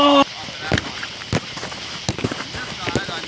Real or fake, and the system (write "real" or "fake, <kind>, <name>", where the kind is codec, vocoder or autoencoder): real